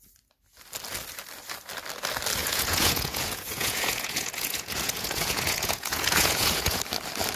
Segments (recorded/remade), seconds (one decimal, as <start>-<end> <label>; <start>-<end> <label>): 0.0-2.4 recorded; 2.4-6.8 remade; 6.8-7.4 recorded